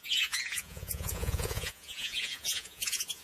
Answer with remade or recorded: remade